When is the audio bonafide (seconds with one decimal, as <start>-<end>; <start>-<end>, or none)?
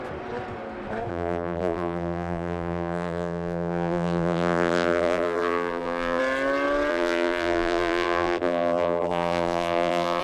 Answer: 0.0-1.1; 6.2-6.9